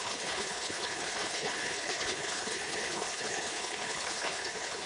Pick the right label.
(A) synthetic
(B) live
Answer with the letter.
A